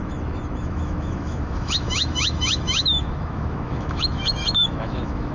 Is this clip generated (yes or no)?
yes